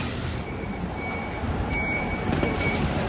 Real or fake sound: fake